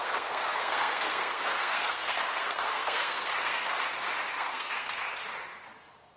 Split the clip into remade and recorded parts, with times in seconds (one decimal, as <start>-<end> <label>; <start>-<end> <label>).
0.0-3.7 remade; 3.7-4.3 recorded; 4.3-5.0 remade; 5.0-6.2 recorded